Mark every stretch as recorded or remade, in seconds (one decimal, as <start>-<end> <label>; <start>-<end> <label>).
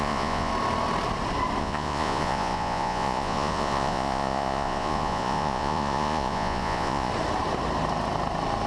0.0-0.5 remade; 0.5-1.6 recorded; 1.6-7.1 remade; 7.1-8.7 recorded